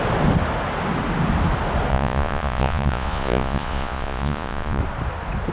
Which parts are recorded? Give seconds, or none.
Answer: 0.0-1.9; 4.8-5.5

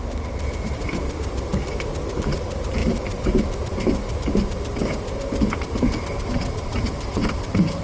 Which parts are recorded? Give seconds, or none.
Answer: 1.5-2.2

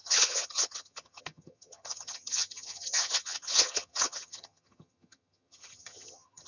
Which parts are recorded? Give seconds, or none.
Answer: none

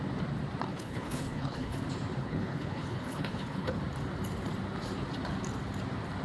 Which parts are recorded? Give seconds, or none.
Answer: 0.0-0.7; 1.8-2.2; 3.8-6.2

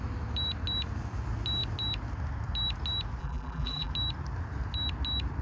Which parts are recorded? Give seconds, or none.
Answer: 0.0-3.2; 3.9-5.4